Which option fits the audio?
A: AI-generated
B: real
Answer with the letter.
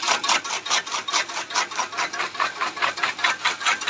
B